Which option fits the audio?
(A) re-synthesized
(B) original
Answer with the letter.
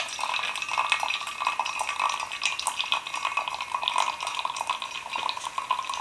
B